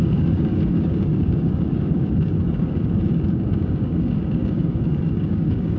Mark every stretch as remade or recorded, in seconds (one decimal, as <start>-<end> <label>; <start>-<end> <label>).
0.0-5.8 remade